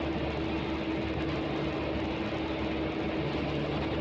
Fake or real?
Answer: real